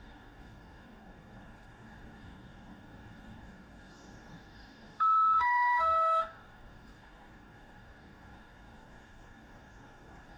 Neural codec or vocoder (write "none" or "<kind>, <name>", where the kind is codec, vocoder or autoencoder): codec, DAC